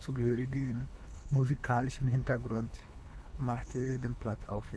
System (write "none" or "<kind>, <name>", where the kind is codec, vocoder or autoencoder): codec, HILCodec